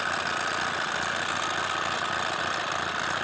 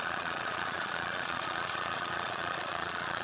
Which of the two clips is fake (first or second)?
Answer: second